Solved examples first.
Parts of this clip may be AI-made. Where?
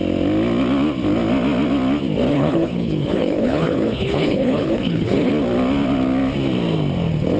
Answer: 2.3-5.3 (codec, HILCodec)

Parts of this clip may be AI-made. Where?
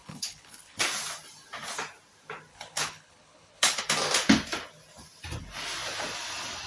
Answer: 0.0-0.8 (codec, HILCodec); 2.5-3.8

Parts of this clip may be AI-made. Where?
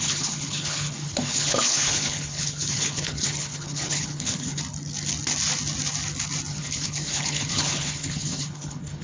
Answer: 0.0-4.6 (codec, HILCodec); 6.5-9.0